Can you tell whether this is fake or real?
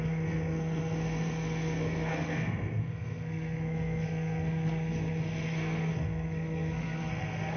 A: fake